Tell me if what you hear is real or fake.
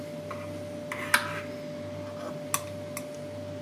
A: real